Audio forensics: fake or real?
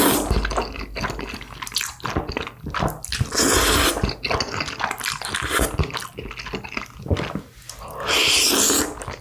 real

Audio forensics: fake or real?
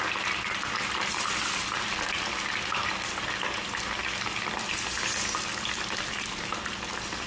real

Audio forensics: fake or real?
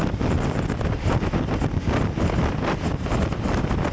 real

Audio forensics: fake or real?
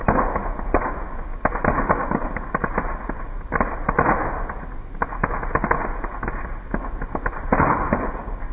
real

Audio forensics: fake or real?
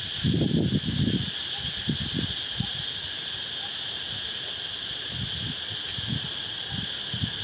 real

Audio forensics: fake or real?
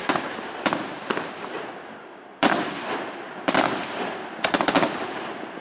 fake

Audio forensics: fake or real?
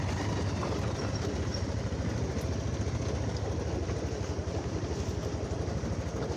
real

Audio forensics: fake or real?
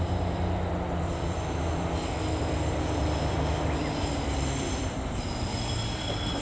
fake